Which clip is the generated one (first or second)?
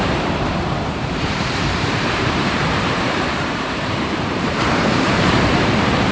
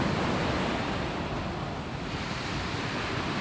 first